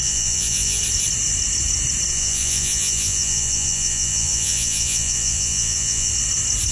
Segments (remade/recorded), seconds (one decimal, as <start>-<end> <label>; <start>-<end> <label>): 0.0-0.8 remade; 0.8-2.1 recorded; 2.1-6.1 remade; 6.1-6.7 recorded